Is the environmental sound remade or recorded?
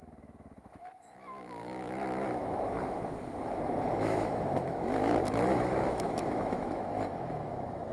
remade